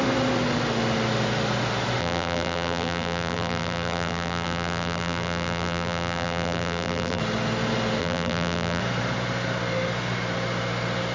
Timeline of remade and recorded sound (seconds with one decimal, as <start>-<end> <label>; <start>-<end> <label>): 0.0-2.0 recorded; 2.0-7.2 remade; 7.2-8.0 recorded; 8.0-8.8 remade; 8.8-11.1 recorded